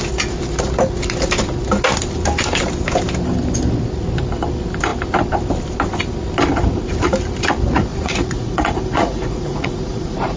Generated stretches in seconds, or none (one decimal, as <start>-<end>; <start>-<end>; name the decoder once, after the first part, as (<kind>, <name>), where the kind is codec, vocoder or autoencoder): 7.9-10.4 (vocoder, Vocos)